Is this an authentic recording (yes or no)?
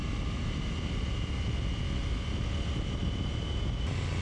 yes